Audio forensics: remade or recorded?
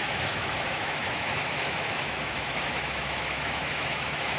remade